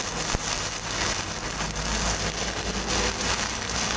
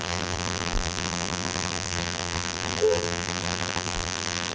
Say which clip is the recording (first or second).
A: first